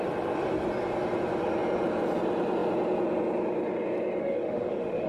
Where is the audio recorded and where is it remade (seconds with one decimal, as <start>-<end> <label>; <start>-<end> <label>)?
0.0-4.2 recorded; 4.2-5.1 remade